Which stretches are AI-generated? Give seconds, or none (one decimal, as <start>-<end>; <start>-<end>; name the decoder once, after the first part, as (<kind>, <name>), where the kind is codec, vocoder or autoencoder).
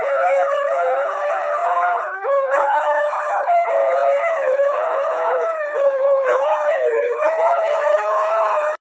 0.0-8.8 (codec, HILCodec)